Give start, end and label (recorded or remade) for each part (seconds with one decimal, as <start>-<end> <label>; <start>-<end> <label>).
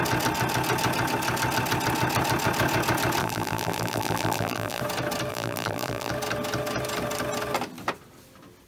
0.0-3.2 recorded; 3.2-4.8 remade; 4.8-5.3 recorded; 5.3-6.1 remade; 6.1-8.7 recorded